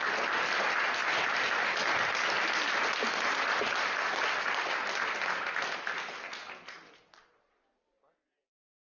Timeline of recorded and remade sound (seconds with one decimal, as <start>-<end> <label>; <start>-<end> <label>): 0.0-8.9 recorded